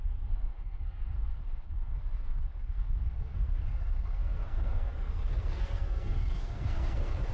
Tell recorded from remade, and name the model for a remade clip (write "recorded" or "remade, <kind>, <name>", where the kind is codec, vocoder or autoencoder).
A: remade, codec, SNAC